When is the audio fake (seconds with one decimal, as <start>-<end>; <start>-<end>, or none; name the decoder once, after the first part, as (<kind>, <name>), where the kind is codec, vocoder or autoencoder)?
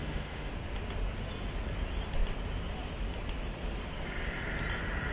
0.0-0.5 (autoencoder, DAC-VAE)